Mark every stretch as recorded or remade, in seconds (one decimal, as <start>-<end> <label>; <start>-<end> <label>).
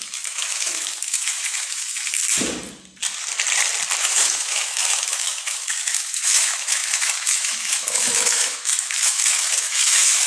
0.0-2.2 remade; 2.2-4.0 recorded; 4.0-10.3 remade